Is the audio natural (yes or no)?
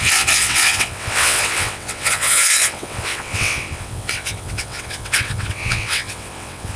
no